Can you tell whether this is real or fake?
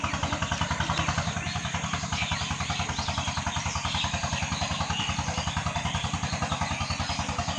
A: fake